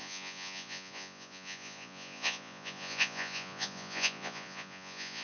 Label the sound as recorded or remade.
remade